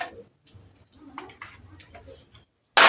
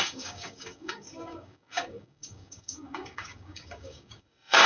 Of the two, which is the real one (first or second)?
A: first